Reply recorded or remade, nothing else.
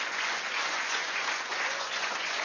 remade